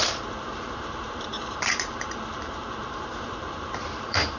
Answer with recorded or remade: remade